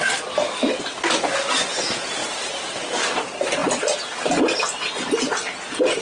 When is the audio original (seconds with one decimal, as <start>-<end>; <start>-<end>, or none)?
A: 0.0-2.2; 3.0-6.0